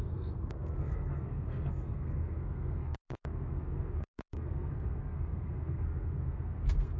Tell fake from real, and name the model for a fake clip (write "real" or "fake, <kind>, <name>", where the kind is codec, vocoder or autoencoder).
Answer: fake, codec, SNAC